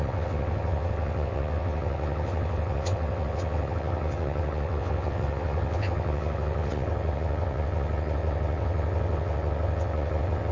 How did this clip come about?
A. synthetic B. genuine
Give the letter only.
A